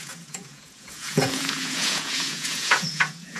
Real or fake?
fake